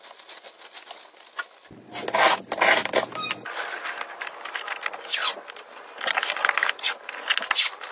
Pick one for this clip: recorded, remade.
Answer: recorded